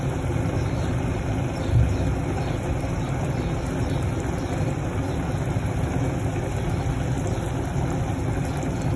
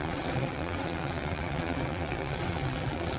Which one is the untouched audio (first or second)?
first